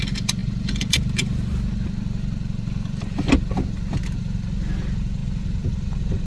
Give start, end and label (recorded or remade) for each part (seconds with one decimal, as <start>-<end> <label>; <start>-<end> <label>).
0.0-6.3 recorded